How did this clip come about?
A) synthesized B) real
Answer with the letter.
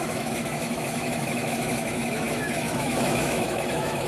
A